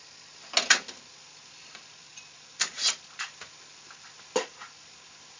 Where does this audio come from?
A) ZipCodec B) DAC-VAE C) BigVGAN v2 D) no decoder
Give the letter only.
D